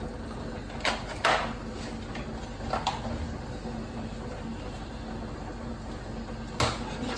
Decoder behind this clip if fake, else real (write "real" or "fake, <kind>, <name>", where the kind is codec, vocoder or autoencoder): real